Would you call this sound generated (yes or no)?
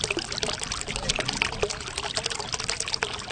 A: no